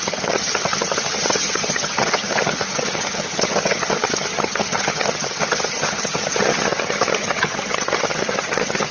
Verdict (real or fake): fake